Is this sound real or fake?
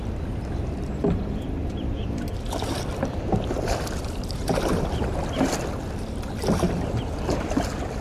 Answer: fake